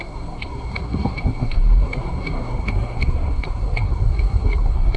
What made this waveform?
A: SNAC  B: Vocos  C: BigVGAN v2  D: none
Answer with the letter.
A